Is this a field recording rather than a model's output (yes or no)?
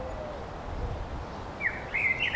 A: yes